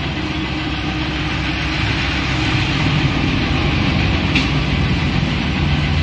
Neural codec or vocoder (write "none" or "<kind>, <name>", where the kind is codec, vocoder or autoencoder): none